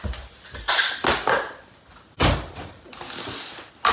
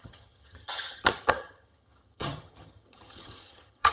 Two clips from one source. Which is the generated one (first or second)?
second